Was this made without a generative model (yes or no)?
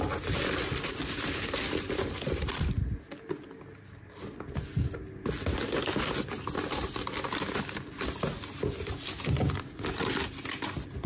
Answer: yes